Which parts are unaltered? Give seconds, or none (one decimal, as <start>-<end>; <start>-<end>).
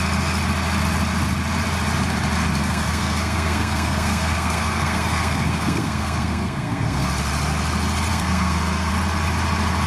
0.0-2.6; 7.1-8.1; 8.9-9.9